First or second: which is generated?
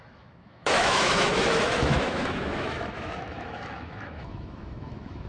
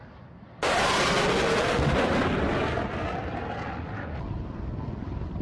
first